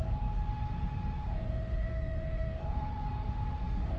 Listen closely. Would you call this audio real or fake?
fake